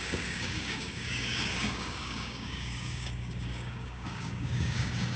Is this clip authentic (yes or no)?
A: no